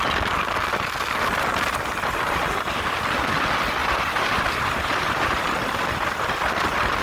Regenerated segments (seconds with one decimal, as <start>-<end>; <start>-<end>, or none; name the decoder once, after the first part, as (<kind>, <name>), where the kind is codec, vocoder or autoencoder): 3.8-5.4 (vocoder, BigVGAN v2)